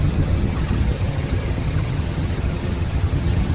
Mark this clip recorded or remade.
remade